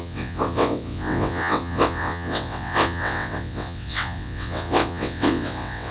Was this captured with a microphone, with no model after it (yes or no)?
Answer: no